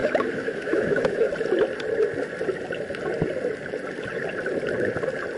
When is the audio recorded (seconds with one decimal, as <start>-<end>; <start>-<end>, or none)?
1.3-5.4